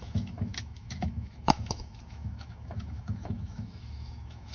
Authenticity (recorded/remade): remade